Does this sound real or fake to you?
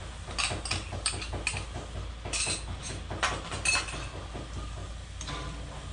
real